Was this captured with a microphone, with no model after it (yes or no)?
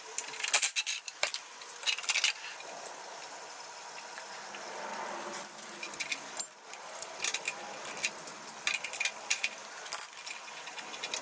yes